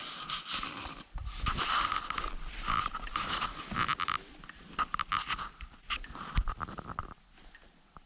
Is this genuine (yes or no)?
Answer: yes